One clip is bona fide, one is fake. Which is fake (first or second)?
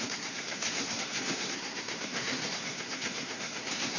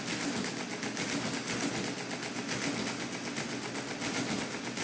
first